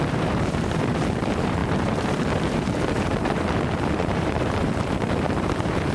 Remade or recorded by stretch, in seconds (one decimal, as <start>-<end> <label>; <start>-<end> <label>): 0.0-5.9 remade